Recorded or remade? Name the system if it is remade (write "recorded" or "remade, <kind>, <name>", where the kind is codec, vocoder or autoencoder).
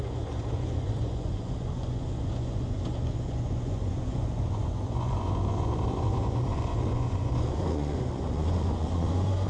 remade, vocoder, Vocos